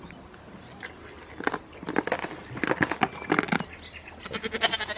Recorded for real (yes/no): yes